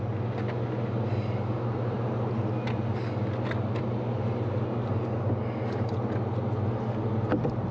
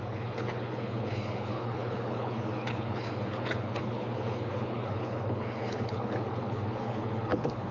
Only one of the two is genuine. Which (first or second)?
first